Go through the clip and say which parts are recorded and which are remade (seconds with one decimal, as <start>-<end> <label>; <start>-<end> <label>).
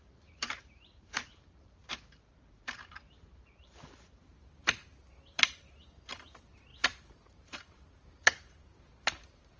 0.0-9.6 remade